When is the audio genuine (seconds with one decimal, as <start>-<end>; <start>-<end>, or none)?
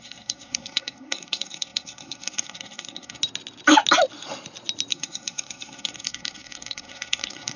3.2-4.9